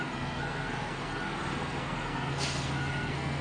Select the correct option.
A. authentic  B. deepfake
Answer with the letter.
B